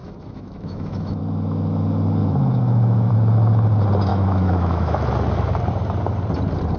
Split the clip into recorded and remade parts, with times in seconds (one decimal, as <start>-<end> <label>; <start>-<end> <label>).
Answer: 0.0-1.2 remade; 1.2-2.2 recorded; 2.2-3.1 remade; 3.1-4.1 recorded; 4.1-5.1 remade; 5.1-6.8 recorded